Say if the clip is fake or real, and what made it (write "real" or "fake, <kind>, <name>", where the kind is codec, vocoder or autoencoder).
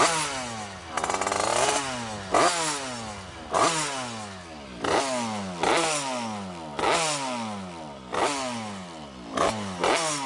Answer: real